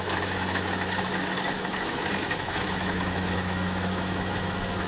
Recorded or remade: remade